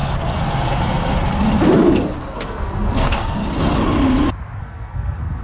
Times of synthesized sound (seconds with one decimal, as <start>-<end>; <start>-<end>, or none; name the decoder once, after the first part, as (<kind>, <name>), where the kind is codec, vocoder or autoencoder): 2.3-3.4 (codec, SNAC); 4.6-5.4